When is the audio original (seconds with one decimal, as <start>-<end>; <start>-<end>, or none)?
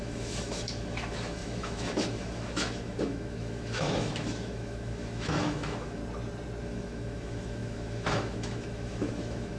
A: 6.0-6.6